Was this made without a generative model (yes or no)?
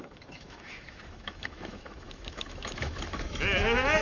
no